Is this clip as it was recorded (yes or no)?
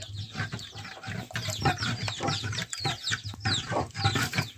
yes